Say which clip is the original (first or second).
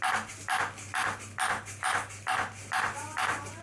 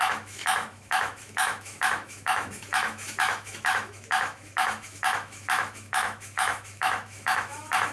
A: first